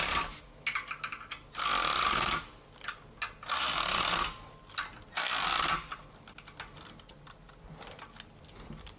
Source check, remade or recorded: recorded